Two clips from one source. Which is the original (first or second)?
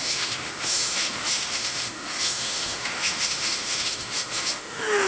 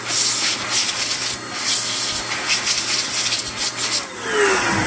second